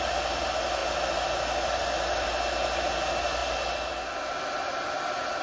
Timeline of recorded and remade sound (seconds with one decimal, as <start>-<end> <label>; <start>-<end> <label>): 0.0-5.4 recorded